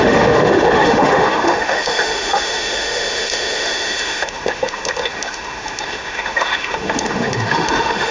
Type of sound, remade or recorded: remade